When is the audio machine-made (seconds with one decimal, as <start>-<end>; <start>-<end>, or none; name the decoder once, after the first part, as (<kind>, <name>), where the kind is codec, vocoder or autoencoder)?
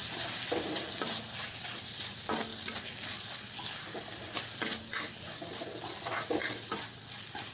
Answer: none